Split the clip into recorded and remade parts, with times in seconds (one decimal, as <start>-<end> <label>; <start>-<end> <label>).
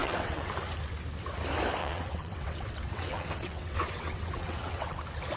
0.0-0.5 remade; 0.5-1.8 recorded; 1.8-5.0 remade; 5.0-5.4 recorded